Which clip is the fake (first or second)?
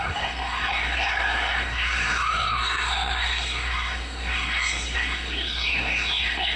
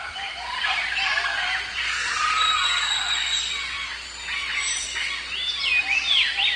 first